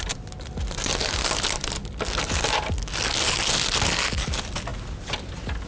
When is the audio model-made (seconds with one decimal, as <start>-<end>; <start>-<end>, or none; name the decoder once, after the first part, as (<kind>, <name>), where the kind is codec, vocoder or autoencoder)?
none